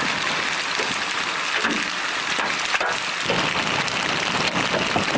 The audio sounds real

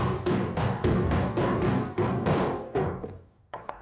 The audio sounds fake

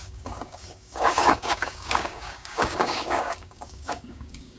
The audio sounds fake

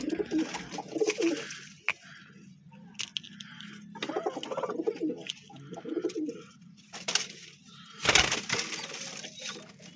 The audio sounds real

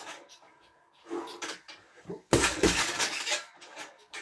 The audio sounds fake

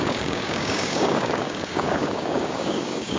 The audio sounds fake